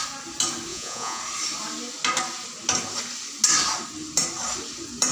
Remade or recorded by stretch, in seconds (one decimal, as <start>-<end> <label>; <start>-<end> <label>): 0.0-0.7 recorded; 0.7-1.2 remade; 1.2-5.1 recorded

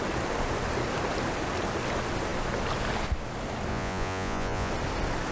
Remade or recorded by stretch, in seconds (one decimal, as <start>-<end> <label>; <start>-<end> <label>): 0.0-3.7 recorded; 3.7-4.7 remade; 4.7-5.3 recorded